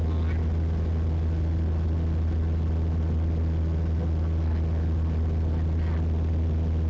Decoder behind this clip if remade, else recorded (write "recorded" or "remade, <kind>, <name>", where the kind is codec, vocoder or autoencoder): recorded